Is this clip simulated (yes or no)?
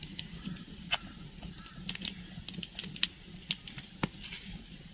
no